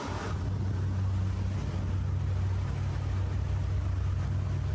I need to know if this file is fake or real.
real